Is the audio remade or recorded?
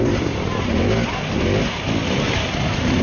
recorded